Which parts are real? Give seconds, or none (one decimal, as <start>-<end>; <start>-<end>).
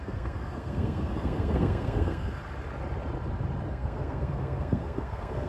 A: 2.4-3.7